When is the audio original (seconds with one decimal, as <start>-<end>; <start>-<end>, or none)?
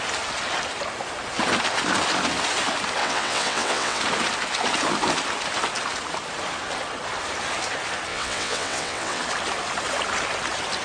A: 0.0-3.0; 4.0-8.1; 9.2-10.8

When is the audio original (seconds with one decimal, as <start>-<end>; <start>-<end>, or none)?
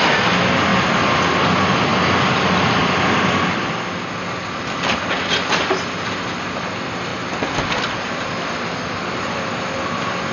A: 0.0-10.3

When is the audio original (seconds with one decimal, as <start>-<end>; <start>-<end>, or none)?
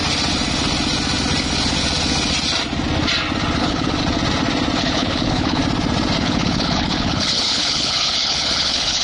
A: 0.0-3.6; 4.0-4.8; 5.6-6.2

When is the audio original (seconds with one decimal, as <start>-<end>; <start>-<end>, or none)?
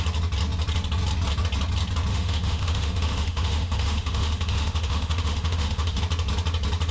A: 0.0-2.1; 6.0-6.9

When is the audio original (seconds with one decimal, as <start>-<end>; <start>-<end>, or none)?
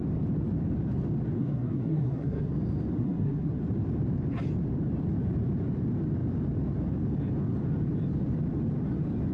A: 0.0-1.4; 2.5-3.0; 3.6-9.3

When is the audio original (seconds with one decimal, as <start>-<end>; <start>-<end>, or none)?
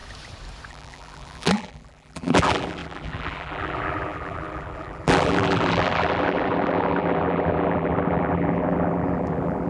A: 0.0-0.7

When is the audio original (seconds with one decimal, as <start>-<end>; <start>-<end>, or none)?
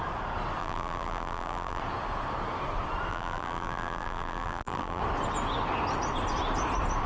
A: 0.0-0.6; 1.8-3.1; 5.0-7.1